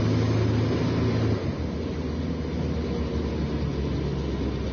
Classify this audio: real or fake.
real